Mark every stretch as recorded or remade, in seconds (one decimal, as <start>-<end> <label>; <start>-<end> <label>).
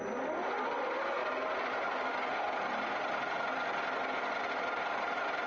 0.0-5.5 recorded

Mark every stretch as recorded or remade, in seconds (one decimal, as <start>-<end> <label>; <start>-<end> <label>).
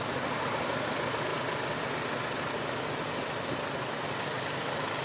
0.0-5.0 recorded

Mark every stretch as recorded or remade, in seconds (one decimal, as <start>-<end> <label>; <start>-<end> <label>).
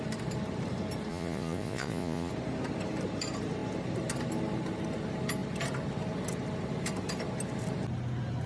0.0-1.1 recorded; 1.1-2.3 remade; 2.3-8.5 recorded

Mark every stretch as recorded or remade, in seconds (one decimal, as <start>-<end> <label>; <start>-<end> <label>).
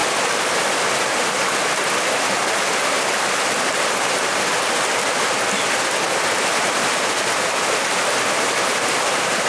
0.0-9.5 recorded